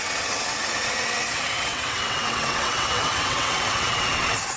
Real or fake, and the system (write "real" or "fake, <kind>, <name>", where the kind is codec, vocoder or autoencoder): fake, vocoder, WaveNeXt